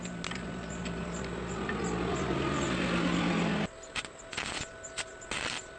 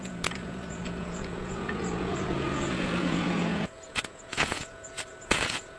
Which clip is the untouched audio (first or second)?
first